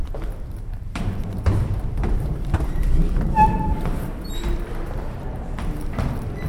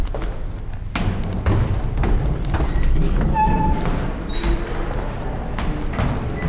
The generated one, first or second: first